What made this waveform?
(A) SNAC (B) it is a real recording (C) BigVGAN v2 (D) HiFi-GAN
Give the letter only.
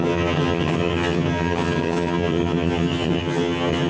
D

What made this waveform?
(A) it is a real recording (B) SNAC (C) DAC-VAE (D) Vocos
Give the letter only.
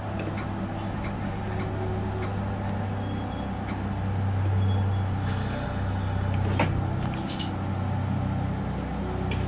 A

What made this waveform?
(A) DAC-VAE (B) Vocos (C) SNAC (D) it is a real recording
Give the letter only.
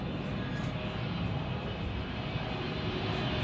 D